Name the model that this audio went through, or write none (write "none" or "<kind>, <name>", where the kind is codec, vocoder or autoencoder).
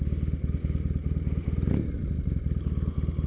none